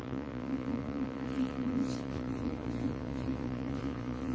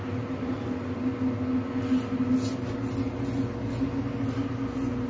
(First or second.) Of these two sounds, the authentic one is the second